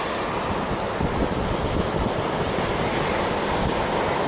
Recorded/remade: recorded